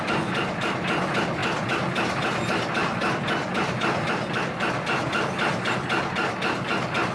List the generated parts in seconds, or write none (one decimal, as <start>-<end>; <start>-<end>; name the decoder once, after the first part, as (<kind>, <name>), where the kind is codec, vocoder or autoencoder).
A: none